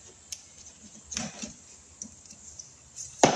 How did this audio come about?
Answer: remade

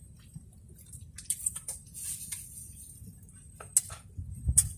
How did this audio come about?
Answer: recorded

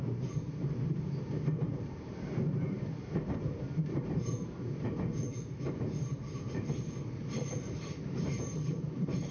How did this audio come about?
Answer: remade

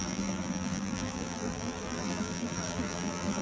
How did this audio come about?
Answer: remade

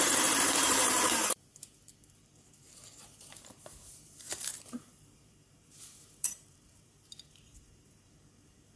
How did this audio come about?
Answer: remade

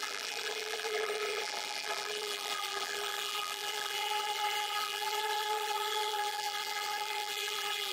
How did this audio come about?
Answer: remade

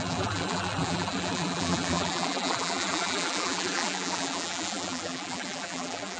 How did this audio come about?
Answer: remade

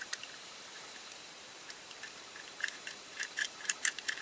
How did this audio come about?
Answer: remade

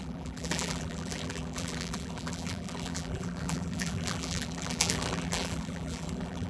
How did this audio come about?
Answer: remade